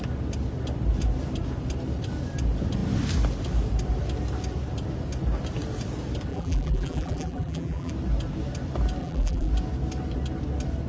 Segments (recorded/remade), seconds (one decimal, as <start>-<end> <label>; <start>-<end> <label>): 0.0-6.3 recorded; 6.3-7.9 remade; 7.9-9.0 recorded; 9.0-9.5 remade; 9.5-10.9 recorded